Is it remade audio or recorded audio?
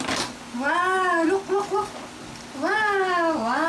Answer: recorded